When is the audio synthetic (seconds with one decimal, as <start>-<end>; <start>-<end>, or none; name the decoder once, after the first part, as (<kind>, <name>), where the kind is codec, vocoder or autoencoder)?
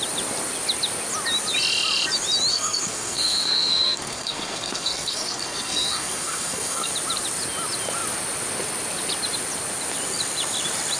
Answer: 2.5-6.9 (codec, SNAC)